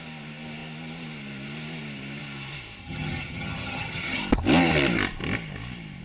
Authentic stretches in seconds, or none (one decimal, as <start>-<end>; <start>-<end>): 0.0-2.8; 4.2-6.0